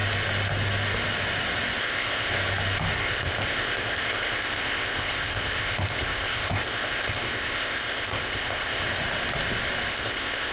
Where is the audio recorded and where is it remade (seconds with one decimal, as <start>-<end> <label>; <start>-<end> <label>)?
0.0-1.8 recorded; 1.8-2.3 remade; 2.3-3.0 recorded; 3.0-8.8 remade; 8.8-9.9 recorded; 9.9-10.5 remade